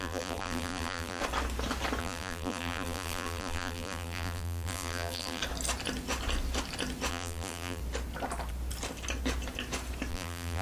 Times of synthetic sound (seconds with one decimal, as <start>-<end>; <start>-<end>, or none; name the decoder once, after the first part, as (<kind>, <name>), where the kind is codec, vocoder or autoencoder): 0.0-1.2 (vocoder, BigVGAN v2); 2.0-5.4; 7.1-7.8; 10.1-10.6